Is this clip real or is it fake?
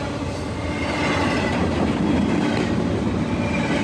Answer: real